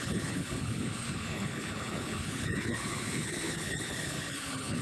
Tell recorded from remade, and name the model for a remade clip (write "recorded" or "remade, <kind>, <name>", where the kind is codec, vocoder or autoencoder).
remade, codec, HILCodec